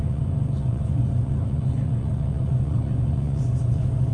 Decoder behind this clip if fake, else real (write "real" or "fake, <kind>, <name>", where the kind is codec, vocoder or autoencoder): fake, vocoder, Vocos